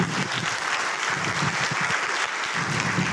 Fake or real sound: real